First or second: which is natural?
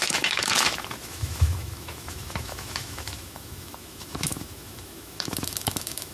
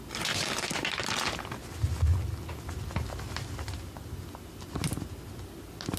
second